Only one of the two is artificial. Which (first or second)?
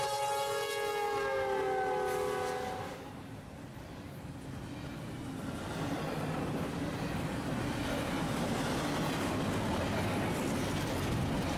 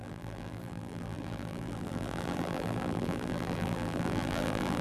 second